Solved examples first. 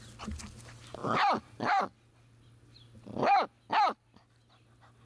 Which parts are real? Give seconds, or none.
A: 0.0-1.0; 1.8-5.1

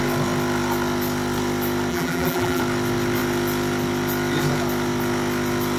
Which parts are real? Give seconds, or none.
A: 0.0-1.9; 2.6-5.8

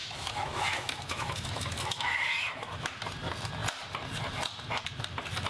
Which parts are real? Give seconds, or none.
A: 2.9-5.5

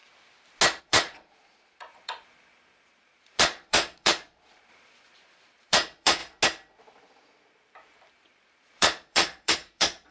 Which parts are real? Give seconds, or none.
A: 0.0-0.8; 6.2-8.1

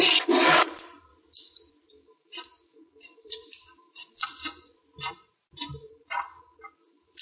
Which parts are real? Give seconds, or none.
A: 1.1-1.9; 4.3-5.9

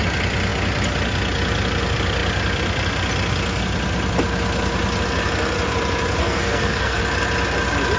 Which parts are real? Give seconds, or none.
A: 0.0-6.2; 7.0-8.0